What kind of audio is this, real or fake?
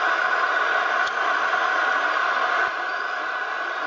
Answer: real